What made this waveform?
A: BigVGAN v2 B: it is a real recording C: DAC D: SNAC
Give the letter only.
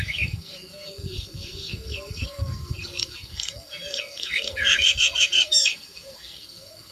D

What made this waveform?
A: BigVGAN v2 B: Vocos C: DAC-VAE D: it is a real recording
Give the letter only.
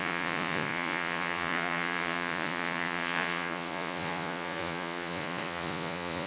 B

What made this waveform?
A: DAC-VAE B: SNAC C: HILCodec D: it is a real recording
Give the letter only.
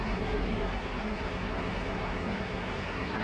B